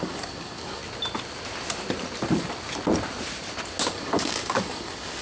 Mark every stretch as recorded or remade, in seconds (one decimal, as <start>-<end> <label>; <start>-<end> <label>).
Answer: 0.0-0.8 remade; 0.8-3.9 recorded; 3.9-5.2 remade